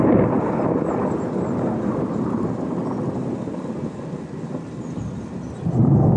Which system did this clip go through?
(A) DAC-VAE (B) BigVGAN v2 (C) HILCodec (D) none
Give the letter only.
D